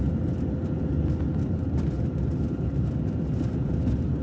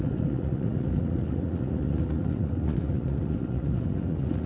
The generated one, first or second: second